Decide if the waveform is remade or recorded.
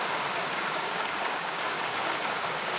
remade